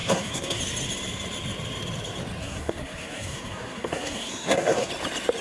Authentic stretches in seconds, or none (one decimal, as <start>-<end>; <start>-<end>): 0.6-2.4; 4.9-5.4